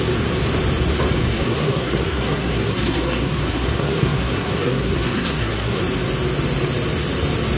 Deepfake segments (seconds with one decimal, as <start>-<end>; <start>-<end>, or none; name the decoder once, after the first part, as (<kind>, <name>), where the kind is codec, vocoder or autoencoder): 1.2-5.8 (codec, SNAC)